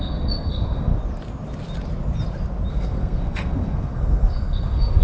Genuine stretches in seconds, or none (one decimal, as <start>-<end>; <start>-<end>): 0.9-2.7